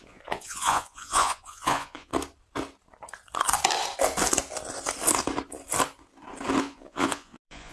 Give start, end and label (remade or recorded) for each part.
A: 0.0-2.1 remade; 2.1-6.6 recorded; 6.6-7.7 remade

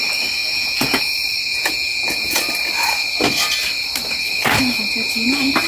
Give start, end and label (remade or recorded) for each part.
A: 0.0-0.4 recorded; 0.4-1.0 remade; 1.0-1.5 recorded; 1.5-2.4 remade; 2.4-5.7 recorded

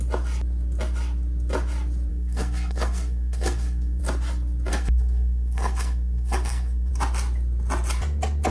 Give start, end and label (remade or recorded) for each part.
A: 0.0-2.1 recorded; 2.1-4.0 remade; 4.0-4.7 recorded; 4.7-6.9 remade; 6.9-8.5 recorded

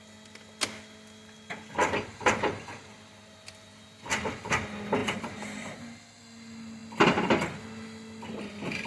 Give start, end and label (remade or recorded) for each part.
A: 0.0-1.8 recorded; 1.8-4.1 remade; 4.1-5.0 recorded; 5.0-6.2 remade; 6.2-8.9 recorded

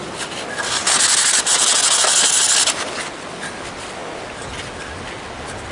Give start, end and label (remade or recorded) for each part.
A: 0.0-5.7 recorded

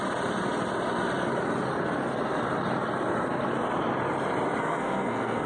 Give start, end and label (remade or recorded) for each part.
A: 0.0-4.6 recorded; 4.6-5.5 remade

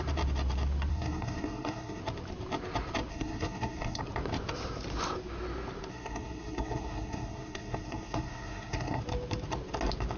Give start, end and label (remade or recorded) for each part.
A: 0.0-0.9 recorded; 0.9-2.0 remade; 2.0-3.1 recorded; 3.1-4.0 remade; 4.0-5.9 recorded; 5.9-9.0 remade; 9.0-10.2 recorded

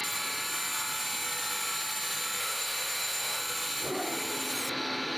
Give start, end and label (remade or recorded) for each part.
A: 0.0-2.4 recorded; 2.4-3.4 remade; 3.4-5.2 recorded